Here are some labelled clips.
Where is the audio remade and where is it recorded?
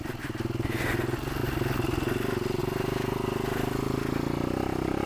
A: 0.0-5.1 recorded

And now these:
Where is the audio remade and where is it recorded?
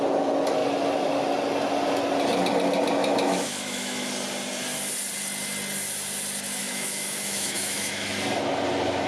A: 0.0-3.0 recorded; 3.0-4.1 remade; 4.1-6.6 recorded; 6.6-8.1 remade; 8.1-9.1 recorded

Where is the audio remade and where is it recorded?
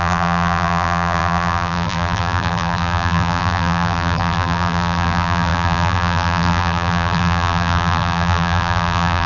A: 0.0-9.3 remade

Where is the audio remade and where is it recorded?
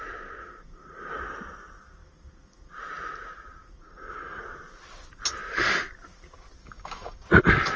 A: 0.0-3.8 recorded; 3.8-4.4 remade; 4.4-6.6 recorded; 6.6-7.2 remade; 7.2-7.8 recorded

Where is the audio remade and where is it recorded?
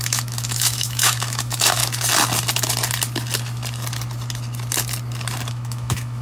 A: 0.0-1.8 remade; 1.8-5.5 recorded; 5.5-6.2 remade